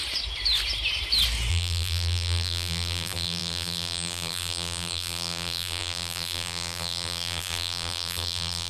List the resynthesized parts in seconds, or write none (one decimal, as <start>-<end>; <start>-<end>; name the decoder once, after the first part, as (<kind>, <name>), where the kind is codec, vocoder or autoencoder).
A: 1.5-8.7 (vocoder, BigVGAN v2)